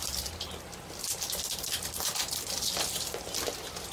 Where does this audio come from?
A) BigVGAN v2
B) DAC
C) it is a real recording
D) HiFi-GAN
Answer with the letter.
C